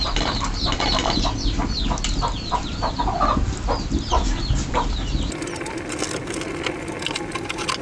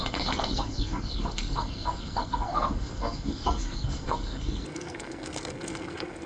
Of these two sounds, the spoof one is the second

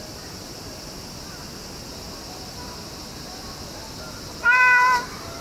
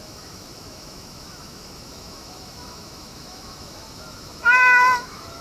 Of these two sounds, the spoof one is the second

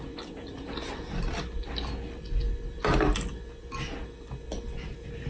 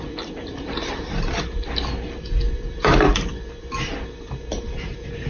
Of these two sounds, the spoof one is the second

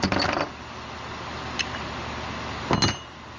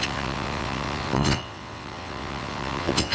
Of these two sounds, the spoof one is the second